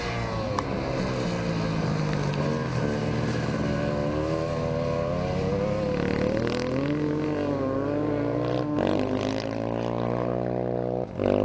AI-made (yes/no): no